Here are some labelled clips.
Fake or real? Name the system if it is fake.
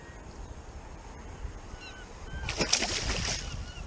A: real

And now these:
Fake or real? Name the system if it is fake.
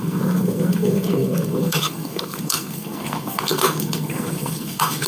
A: fake, codec, SNAC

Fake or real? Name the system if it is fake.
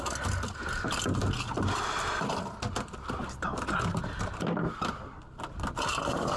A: real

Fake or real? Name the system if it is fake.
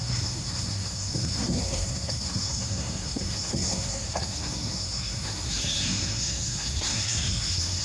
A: fake, codec, SNAC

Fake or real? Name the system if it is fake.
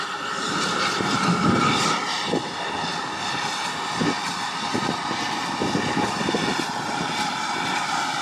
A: real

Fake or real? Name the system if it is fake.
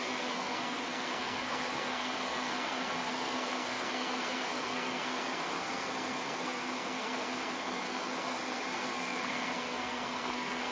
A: fake, codec, SNAC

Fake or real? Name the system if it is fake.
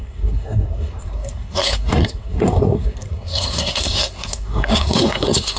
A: fake, codec, SNAC